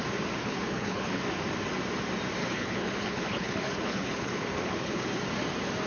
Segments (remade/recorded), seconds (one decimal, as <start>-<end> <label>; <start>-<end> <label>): 0.0-0.4 recorded; 0.4-1.2 remade; 1.2-2.4 recorded; 2.4-5.1 remade; 5.1-5.9 recorded